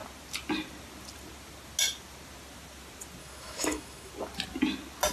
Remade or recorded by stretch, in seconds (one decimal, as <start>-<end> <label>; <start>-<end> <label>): 0.0-3.2 recorded; 3.2-4.1 remade; 4.1-5.1 recorded